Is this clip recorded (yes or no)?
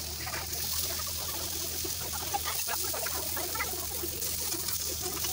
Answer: yes